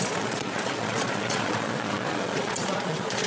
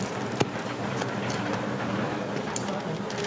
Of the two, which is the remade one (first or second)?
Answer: first